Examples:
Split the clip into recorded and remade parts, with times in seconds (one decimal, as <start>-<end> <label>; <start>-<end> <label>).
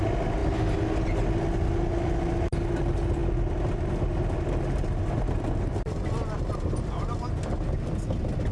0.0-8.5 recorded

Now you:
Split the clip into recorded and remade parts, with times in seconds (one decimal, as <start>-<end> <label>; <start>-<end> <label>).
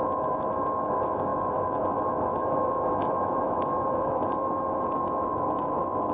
0.0-6.1 remade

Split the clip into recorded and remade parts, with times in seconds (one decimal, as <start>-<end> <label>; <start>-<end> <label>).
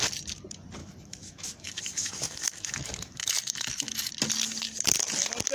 0.0-0.8 recorded; 0.8-4.1 remade; 4.1-5.5 recorded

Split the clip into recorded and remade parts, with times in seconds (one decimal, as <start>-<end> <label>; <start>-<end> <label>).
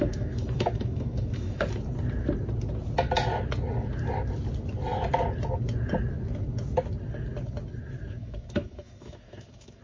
0.0-1.6 remade; 1.6-8.2 recorded; 8.2-9.8 remade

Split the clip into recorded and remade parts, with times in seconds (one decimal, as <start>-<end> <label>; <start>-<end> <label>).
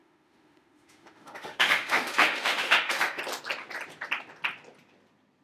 0.0-3.2 remade; 3.2-5.4 recorded